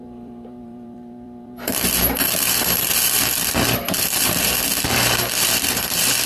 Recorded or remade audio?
remade